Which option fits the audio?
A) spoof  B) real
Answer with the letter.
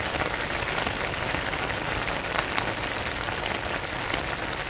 B